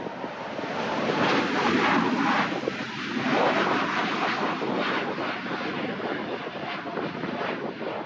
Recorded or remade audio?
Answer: recorded